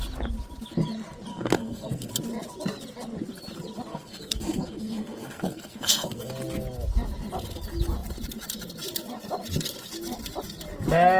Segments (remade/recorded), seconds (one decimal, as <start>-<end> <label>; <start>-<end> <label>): 0.0-1.3 recorded; 1.3-2.1 remade; 2.1-3.9 recorded; 3.9-6.3 remade; 6.3-11.2 recorded